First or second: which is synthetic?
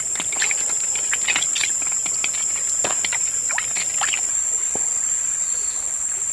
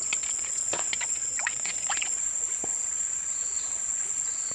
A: second